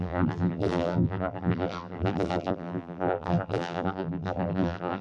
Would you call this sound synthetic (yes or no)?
yes